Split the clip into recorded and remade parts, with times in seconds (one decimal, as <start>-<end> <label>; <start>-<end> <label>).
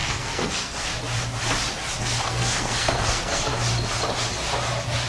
0.0-0.9 remade; 0.9-2.0 recorded; 2.0-3.5 remade; 3.5-5.1 recorded